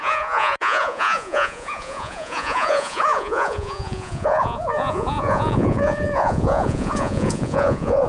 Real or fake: fake